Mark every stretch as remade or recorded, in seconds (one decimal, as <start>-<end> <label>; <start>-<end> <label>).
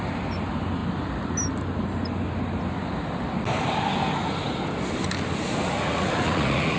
0.0-5.7 recorded; 5.7-6.8 remade